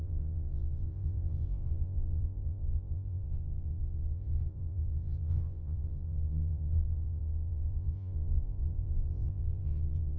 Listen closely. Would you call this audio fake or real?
fake